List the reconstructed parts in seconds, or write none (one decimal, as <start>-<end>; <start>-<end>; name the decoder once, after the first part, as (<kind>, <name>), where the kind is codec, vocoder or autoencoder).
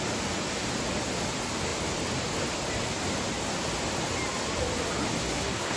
5.2-5.8 (codec, SNAC)